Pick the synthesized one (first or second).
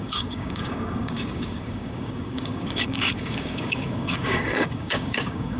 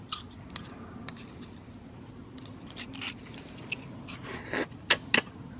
first